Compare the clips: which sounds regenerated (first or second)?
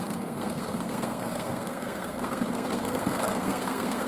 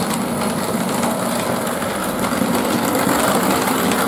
first